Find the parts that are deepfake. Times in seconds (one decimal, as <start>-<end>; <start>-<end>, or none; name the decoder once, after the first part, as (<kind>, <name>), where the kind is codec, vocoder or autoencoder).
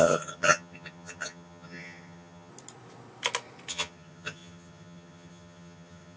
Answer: 0.0-2.5 (vocoder, HiFi-GAN); 3.7-6.2